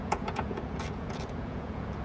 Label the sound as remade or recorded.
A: remade